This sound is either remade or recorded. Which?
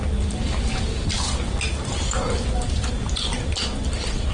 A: recorded